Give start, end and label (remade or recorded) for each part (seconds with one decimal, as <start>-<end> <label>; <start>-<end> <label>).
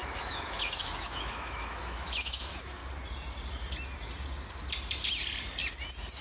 0.0-2.8 remade; 2.8-6.2 recorded